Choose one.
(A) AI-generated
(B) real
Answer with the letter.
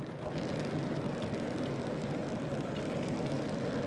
B